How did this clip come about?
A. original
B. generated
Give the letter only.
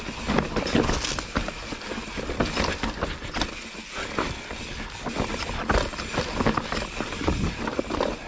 A